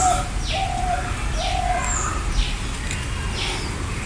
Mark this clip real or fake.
real